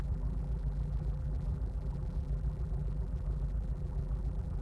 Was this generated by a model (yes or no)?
yes